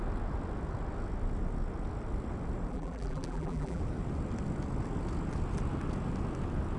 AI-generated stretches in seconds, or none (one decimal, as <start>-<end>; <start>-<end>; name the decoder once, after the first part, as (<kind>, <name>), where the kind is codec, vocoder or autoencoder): 2.7-3.8 (vocoder, BigVGAN v2)